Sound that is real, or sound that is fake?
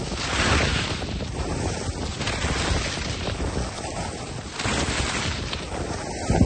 real